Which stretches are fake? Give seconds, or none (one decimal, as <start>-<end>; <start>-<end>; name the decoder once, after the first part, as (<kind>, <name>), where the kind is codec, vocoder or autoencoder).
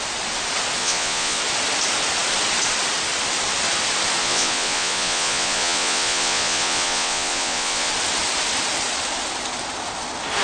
0.8-1.4 (vocoder, Vocos); 4.2-7.9